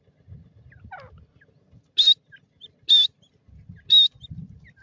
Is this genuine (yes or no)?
yes